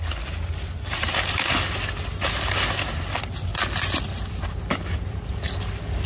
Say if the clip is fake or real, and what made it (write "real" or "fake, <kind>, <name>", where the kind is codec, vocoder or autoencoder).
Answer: real